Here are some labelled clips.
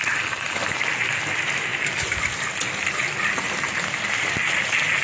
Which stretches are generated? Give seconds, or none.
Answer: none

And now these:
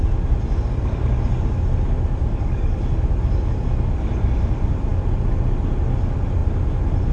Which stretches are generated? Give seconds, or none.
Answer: 2.2-2.8 (codec, DAC)

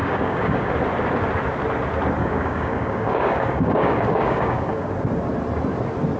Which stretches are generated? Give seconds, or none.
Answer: 0.0-0.7 (codec, DAC); 2.2-4.9

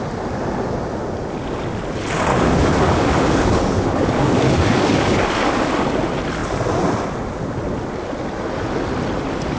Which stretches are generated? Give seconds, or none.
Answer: 2.3-5.6 (codec, DAC)

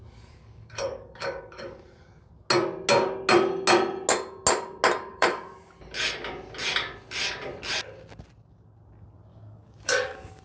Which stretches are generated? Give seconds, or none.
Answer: 0.0-2.3 (codec, DAC); 5.1-5.7; 9.3-10.4

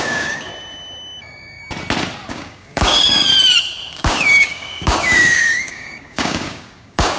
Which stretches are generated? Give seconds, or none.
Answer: 0.0-0.5 (codec, DAC); 1.2-1.6; 2.3-3.3; 3.9-7.2

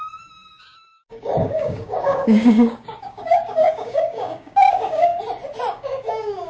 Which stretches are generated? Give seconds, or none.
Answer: 0.0-5.1 (codec, DAC); 5.7-6.5

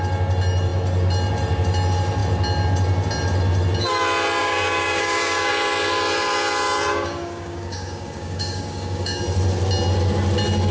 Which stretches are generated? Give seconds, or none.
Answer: 4.4-5.5 (codec, DAC); 6.9-9.2